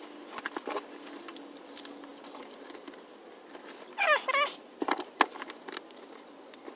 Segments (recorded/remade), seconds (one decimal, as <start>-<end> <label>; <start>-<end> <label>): 0.0-6.8 recorded